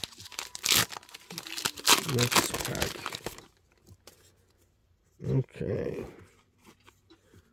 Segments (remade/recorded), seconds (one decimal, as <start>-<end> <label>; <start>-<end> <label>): 0.0-3.0 recorded; 3.0-4.1 remade; 4.1-4.8 recorded; 4.8-5.6 remade; 5.6-7.5 recorded